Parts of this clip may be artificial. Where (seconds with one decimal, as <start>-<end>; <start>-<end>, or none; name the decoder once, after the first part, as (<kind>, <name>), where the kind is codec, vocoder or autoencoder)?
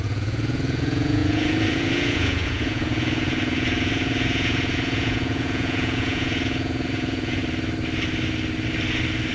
0.0-7.4 (vocoder, Vocos)